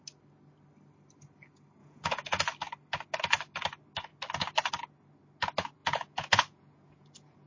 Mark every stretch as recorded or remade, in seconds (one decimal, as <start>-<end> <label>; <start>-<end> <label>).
0.0-1.8 recorded; 1.8-2.4 remade; 2.4-5.8 recorded; 5.8-7.5 remade